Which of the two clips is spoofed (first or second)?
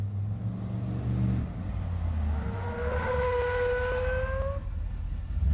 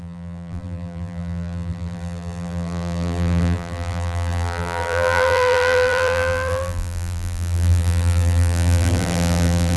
second